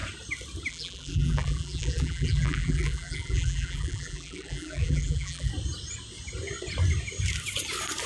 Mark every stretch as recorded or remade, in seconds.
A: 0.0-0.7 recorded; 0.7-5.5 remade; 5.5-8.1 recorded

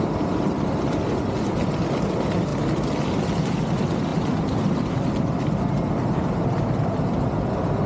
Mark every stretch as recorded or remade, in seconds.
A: 0.0-7.9 recorded

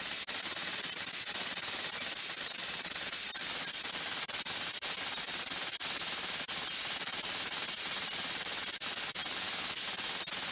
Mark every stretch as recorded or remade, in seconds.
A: 0.0-9.2 remade; 9.2-10.5 recorded

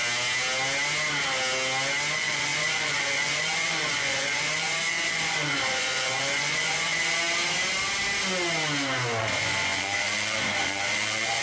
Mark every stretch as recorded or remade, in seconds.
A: 0.0-2.1 recorded; 2.1-7.0 remade; 7.0-9.2 recorded; 9.2-11.4 remade

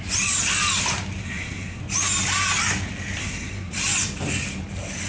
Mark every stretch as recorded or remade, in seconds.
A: 0.0-1.2 recorded; 1.2-1.8 remade; 1.8-3.2 recorded; 3.2-3.7 remade; 3.7-5.1 recorded

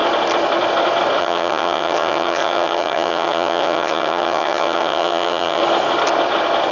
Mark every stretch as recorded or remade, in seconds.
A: 0.0-1.2 recorded; 1.2-5.6 remade; 5.6-6.7 recorded

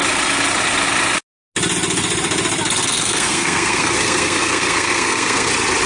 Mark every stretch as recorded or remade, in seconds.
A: 0.0-2.8 recorded; 2.8-5.5 remade; 5.5-5.9 recorded

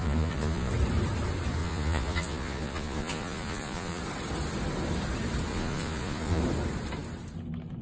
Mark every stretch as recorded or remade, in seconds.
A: 0.0-0.7 remade; 0.7-1.6 recorded; 1.6-4.0 remade; 4.0-5.5 recorded; 5.5-6.4 remade; 6.4-7.8 recorded